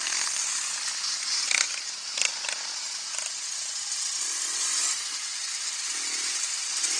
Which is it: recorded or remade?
recorded